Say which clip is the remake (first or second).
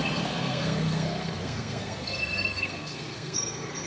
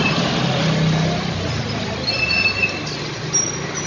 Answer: first